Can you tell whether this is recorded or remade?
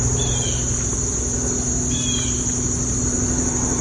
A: recorded